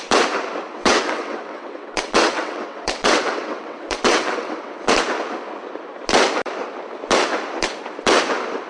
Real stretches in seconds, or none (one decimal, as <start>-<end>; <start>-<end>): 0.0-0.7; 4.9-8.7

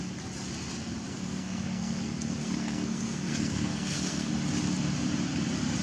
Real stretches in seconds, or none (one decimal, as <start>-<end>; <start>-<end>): 0.0-1.1; 4.3-5.8

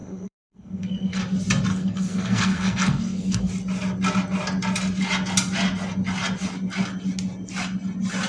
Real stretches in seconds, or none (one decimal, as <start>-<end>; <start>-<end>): 1.2-1.7; 3.5-8.3

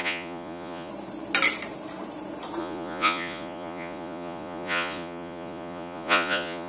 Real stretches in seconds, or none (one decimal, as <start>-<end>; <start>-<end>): 0.9-2.6

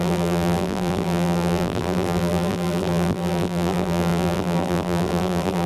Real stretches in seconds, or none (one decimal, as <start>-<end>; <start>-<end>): none